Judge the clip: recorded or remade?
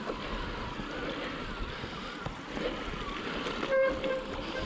recorded